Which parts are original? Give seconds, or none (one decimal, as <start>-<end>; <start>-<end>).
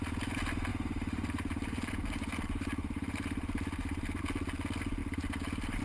0.0-0.7; 4.2-5.0